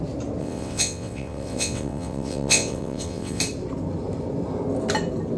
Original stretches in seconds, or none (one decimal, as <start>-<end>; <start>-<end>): 0.0-0.4; 3.4-5.4